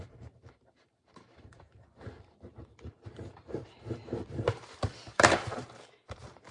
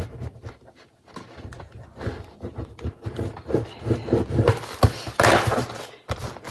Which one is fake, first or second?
first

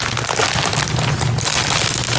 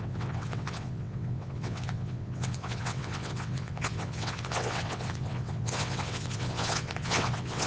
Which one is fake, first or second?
second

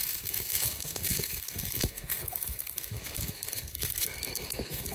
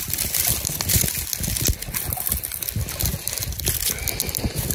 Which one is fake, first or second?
first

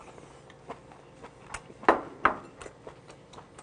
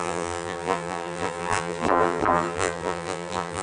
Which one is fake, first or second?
second